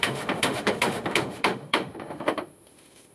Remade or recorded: remade